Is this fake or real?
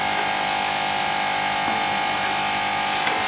real